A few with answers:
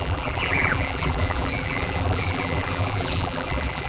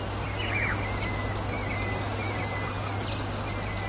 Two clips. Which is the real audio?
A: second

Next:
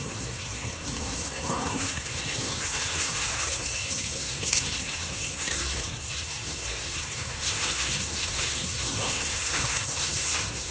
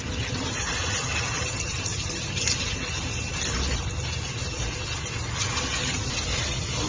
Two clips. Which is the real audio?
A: second